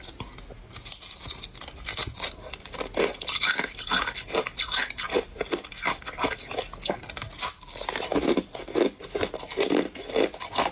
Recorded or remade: recorded